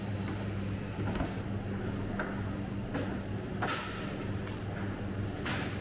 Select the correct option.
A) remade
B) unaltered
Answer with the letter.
B